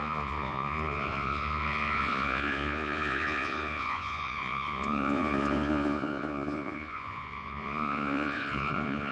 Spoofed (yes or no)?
yes